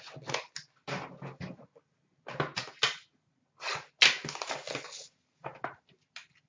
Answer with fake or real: real